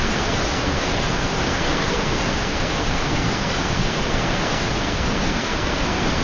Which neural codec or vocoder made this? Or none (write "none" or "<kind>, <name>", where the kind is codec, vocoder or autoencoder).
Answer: codec, SNAC